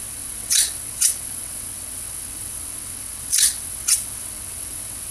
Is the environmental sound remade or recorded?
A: remade